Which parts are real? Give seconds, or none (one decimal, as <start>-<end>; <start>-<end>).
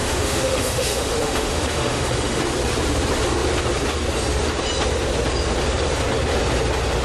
2.4-7.0